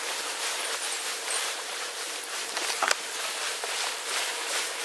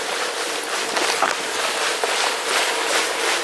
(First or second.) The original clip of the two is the second